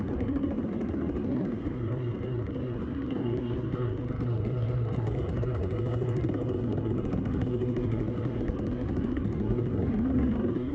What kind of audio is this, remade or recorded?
remade